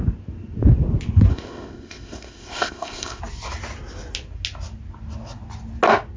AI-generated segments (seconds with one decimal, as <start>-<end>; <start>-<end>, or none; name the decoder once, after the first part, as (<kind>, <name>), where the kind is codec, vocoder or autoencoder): 1.3-3.2 (codec, ZipCodec)